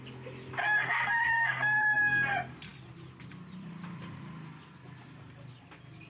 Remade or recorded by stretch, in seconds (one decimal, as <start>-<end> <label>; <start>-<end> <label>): 0.0-0.6 recorded; 0.6-2.0 remade; 2.0-6.1 recorded

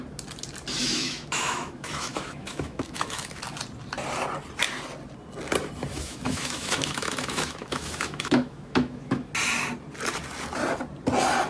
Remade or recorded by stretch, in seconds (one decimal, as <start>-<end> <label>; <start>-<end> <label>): 0.0-0.8 recorded; 0.8-3.4 remade; 3.4-5.9 recorded; 5.9-9.3 remade; 9.3-11.5 recorded